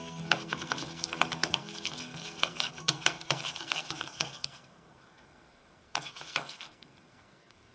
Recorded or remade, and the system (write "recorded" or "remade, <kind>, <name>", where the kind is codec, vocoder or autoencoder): remade, codec, SNAC